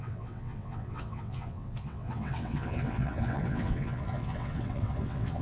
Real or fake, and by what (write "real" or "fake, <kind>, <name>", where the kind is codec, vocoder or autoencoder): fake, vocoder, WaveNeXt